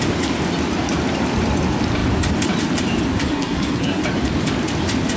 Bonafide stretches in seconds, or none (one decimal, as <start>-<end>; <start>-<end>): 0.0-3.2; 4.0-5.2